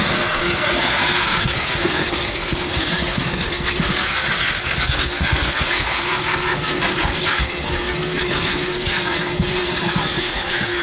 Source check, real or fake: fake